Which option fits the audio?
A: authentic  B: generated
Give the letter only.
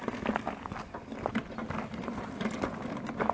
A